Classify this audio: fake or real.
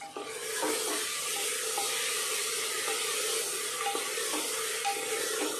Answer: real